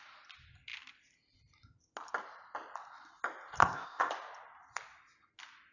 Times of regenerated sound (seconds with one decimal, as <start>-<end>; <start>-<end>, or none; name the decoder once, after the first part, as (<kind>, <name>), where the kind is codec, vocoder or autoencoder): 3.6-4.1 (codec, ZipCodec)